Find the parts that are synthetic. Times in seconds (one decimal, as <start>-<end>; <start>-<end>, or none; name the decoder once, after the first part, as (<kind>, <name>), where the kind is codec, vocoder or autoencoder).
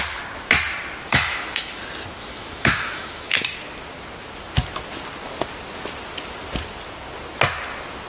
1.1-1.8 (autoencoder, DAC-VAE); 2.2-3.3